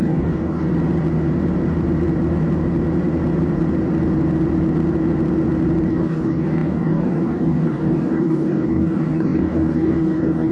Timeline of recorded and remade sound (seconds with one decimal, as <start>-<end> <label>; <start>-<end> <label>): 0.0-0.7 remade; 0.7-5.9 recorded; 5.9-10.5 remade